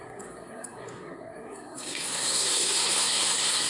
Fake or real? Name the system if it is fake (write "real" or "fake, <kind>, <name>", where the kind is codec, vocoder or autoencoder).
fake, codec, SNAC